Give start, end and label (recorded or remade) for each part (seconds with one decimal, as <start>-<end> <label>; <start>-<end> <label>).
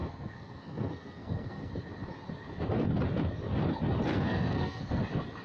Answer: 0.0-1.7 remade; 1.7-4.1 recorded; 4.1-5.0 remade; 5.0-5.4 recorded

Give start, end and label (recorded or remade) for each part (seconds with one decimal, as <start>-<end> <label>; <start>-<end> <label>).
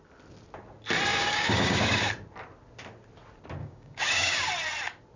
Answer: 0.0-1.1 recorded; 1.1-2.1 remade; 2.1-3.6 recorded; 3.6-4.5 remade; 4.5-5.2 recorded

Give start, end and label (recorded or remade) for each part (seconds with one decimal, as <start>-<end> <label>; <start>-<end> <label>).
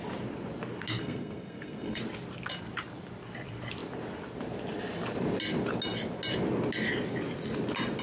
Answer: 0.0-1.0 recorded; 1.0-2.0 remade; 2.0-8.0 recorded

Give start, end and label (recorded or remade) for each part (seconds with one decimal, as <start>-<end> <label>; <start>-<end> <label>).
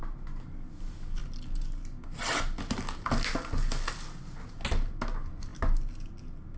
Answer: 0.0-6.6 recorded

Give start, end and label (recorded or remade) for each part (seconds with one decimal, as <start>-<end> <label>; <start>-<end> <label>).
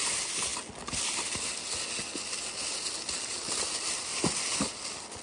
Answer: 0.0-5.2 recorded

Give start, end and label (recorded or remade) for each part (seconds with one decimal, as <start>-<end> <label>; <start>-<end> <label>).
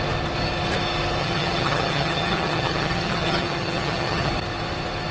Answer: 0.0-1.2 recorded; 1.2-4.3 remade; 4.3-5.1 recorded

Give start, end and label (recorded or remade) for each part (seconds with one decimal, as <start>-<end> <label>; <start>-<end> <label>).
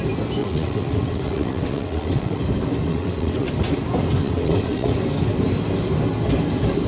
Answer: 0.0-0.4 recorded; 0.4-2.4 remade; 2.4-2.9 recorded; 2.9-3.5 remade; 3.5-4.2 recorded; 4.2-4.9 remade; 4.9-6.9 recorded